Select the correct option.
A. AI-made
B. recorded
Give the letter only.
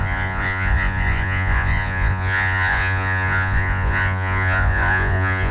A